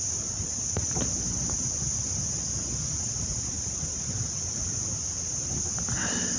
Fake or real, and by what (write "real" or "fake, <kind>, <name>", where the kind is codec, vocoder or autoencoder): real